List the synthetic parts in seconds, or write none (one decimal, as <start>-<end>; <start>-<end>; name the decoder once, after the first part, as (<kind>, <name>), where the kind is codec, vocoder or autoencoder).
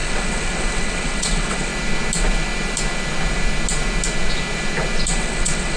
0.0-1.7 (vocoder, WaveNeXt); 5.2-5.8